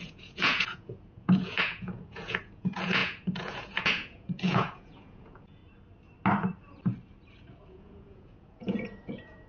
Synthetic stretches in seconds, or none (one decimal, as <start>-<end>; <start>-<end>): 0.0-5.6; 7.7-9.5